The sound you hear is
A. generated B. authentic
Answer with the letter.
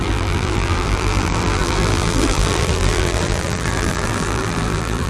A